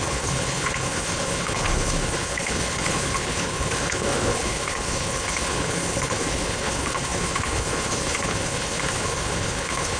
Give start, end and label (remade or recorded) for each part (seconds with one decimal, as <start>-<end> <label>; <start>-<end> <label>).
0.0-10.0 remade